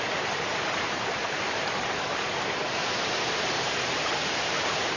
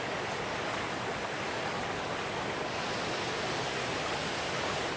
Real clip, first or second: second